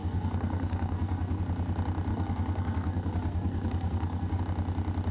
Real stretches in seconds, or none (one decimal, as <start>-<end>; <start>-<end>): 1.4-2.1; 4.4-5.1